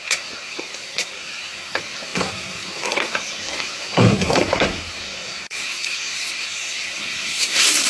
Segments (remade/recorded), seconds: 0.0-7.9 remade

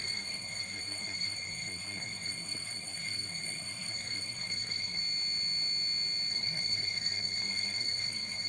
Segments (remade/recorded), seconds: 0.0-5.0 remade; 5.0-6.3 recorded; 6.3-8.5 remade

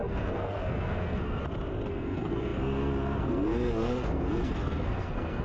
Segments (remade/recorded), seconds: 0.0-1.4 remade; 1.4-1.9 recorded; 1.9-5.4 remade

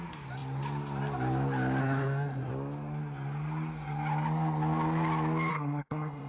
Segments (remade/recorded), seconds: 0.0-1.8 recorded; 1.8-2.5 remade; 2.5-5.5 recorded; 5.5-6.3 remade

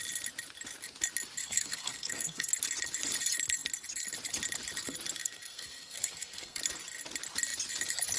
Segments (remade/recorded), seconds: 0.0-1.4 recorded; 1.4-2.5 remade; 2.5-5.2 recorded; 5.2-6.6 remade; 6.6-8.2 recorded

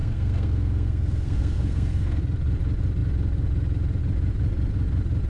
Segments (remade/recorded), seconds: 0.0-2.2 remade; 2.2-5.3 recorded

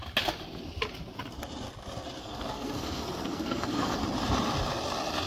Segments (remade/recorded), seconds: 0.0-2.2 recorded; 2.2-4.0 remade; 4.0-5.3 recorded

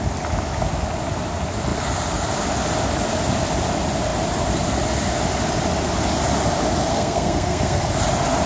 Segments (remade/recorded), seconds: 0.0-6.9 recorded; 6.9-7.8 remade; 7.8-8.5 recorded